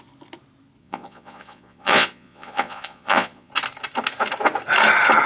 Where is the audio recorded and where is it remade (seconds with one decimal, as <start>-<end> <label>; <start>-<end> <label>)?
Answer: 0.0-0.8 recorded; 0.8-3.5 remade; 3.5-5.3 recorded